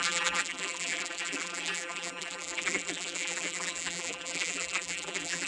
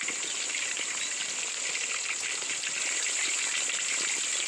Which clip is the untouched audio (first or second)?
second